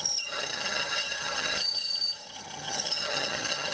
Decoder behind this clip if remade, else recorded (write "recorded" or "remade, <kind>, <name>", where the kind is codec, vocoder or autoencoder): remade, vocoder, HiFi-GAN